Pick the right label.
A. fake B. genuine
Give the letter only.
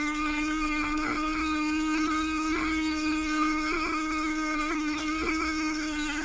A